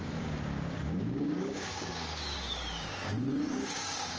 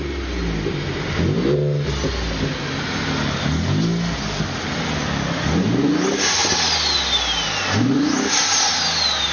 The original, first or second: second